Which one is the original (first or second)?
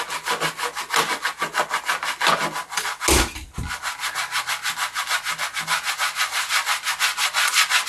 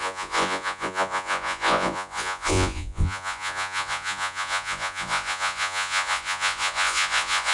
first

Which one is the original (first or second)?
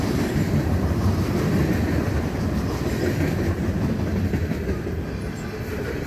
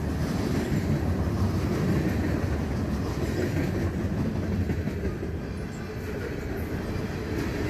second